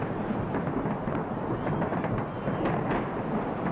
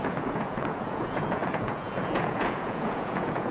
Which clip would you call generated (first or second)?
second